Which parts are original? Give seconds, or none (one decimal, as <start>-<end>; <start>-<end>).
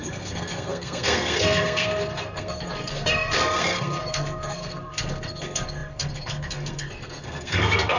none